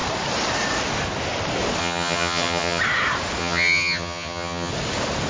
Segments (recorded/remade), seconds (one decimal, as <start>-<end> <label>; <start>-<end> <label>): 0.0-1.8 recorded; 1.8-2.8 remade; 2.8-3.4 recorded; 3.4-4.7 remade; 4.7-5.3 recorded